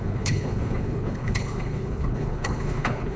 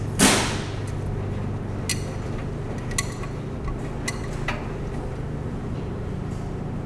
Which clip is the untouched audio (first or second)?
second